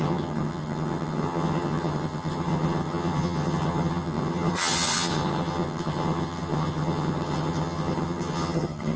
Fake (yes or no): yes